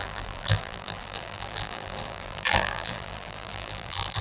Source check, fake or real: fake